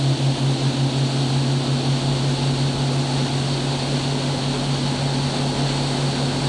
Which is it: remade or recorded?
recorded